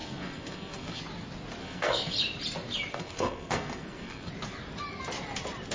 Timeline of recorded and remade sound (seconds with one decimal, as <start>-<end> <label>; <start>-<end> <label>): 0.0-1.0 remade; 1.0-1.6 recorded; 1.6-2.1 remade; 2.1-2.9 recorded; 2.9-4.3 remade; 4.3-5.7 recorded